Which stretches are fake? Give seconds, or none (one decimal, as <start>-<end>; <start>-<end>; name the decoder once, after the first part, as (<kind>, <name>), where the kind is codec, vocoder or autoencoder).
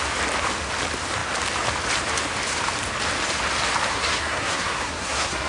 3.9-5.5 (codec, SNAC)